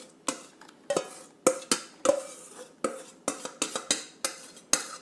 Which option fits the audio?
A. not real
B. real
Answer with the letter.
B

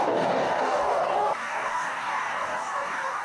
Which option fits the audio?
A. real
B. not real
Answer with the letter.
B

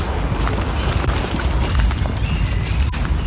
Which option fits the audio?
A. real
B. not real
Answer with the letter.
A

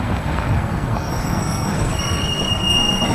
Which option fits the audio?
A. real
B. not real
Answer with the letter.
B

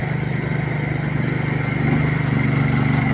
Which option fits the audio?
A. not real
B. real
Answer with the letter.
B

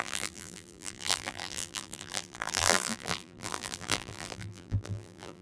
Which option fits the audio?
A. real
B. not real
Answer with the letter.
B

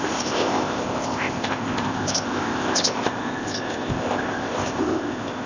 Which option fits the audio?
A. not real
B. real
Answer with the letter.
A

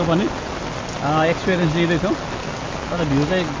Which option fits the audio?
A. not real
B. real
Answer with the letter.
B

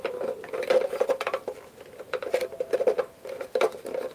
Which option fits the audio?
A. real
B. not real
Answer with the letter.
A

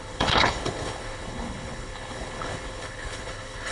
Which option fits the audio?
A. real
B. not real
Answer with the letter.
B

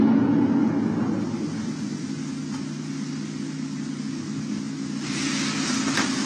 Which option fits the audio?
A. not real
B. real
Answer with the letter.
B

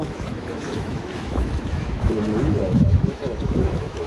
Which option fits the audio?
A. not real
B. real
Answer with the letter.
A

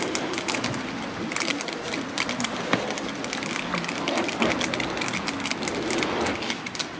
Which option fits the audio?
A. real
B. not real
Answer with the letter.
A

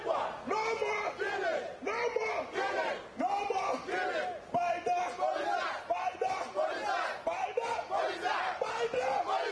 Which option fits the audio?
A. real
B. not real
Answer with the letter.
A